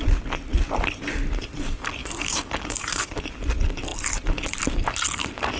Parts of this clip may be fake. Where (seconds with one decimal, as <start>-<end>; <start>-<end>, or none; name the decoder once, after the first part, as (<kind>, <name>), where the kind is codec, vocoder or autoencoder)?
2.0-3.2 (codec, DAC)